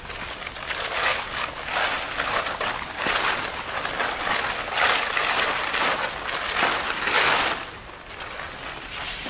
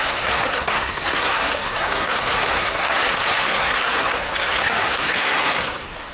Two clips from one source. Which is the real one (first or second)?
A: first